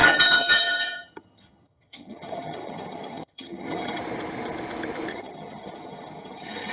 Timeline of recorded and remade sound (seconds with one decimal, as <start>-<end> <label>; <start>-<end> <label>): 0.0-4.0 remade; 4.0-5.1 recorded; 5.1-6.7 remade